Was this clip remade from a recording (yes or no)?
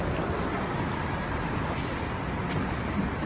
no